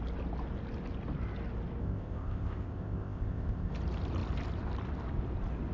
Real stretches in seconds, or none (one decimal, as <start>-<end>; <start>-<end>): 0.0-1.8; 3.7-5.7